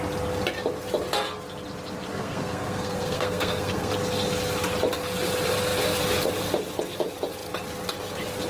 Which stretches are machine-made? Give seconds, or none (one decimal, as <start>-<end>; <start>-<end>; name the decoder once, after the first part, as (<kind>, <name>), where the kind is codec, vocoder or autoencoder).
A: 2.1-3.9 (codec, SNAC)